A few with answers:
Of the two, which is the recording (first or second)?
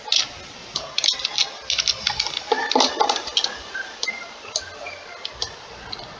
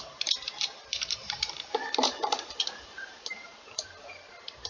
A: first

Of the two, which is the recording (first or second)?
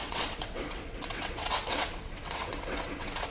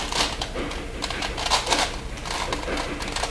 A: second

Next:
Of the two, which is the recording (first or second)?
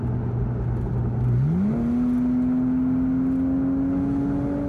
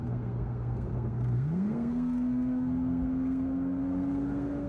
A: first